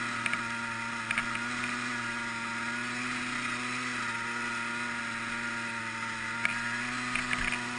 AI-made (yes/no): no